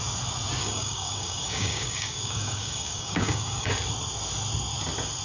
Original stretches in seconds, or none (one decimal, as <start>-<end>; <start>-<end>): 0.0-0.6; 3.7-5.2